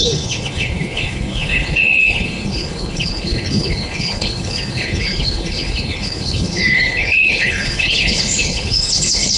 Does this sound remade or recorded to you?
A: remade